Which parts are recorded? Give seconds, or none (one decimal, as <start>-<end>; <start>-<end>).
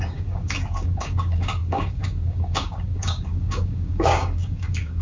none